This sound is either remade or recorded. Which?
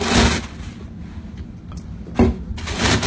recorded